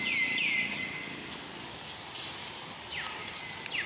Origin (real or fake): real